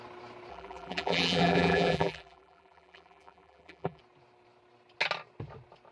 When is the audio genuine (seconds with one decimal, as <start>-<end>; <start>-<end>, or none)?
0.0-0.5; 4.0-5.9